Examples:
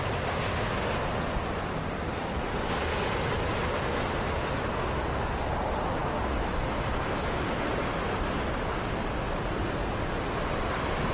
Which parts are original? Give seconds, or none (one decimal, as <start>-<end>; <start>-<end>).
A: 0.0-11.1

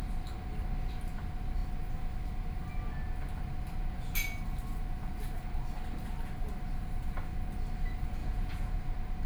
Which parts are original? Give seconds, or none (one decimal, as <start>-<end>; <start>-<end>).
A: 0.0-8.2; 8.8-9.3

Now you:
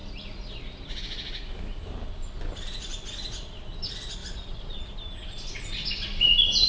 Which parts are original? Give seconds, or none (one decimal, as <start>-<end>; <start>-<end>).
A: 0.0-4.2; 4.9-6.7

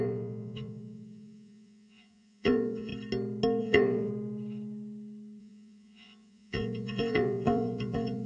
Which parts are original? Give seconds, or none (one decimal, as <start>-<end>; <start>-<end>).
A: 2.9-3.6; 4.1-5.4

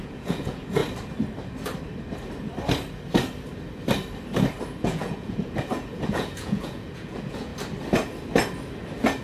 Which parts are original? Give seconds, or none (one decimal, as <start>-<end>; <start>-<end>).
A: 0.8-4.8; 7.5-9.2

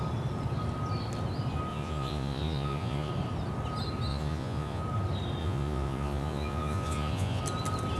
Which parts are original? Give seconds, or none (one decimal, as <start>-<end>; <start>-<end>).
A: 0.0-1.7; 3.1-4.1; 4.8-5.4; 7.4-8.0

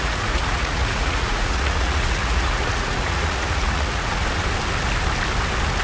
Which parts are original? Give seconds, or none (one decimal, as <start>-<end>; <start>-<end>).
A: 4.2-5.8

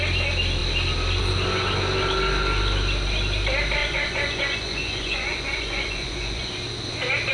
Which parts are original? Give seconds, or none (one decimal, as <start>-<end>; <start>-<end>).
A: 0.0-3.8; 6.5-7.3